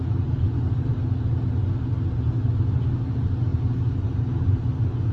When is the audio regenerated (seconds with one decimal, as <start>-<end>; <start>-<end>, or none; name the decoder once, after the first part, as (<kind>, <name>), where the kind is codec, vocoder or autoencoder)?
none